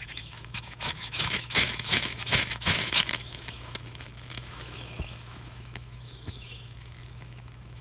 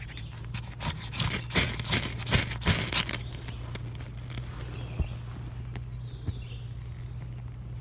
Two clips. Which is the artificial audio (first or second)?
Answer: first